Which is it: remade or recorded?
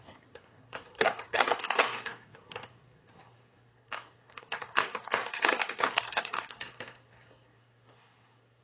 remade